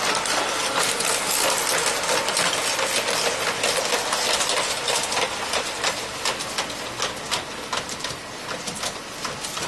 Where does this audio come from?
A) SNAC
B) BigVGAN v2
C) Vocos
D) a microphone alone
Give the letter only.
D